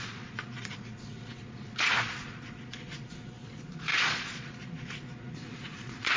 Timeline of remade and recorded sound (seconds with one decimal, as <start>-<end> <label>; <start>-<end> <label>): 0.0-6.2 remade